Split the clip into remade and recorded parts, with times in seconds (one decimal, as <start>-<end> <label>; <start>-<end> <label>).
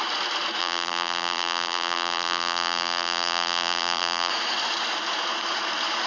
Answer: 0.0-0.6 recorded; 0.6-4.3 remade; 4.3-6.1 recorded